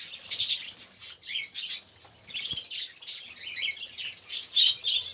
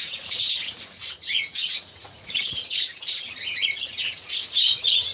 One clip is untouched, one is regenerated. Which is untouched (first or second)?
first